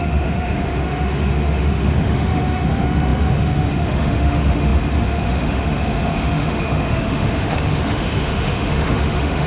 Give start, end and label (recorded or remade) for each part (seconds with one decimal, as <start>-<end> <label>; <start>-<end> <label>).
0.0-9.5 remade